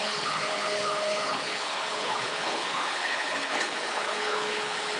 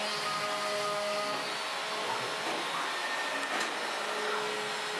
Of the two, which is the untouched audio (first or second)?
second